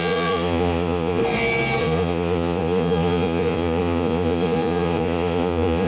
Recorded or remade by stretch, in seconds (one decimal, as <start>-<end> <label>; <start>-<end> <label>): 0.0-1.2 remade; 1.2-1.8 recorded; 1.8-5.9 remade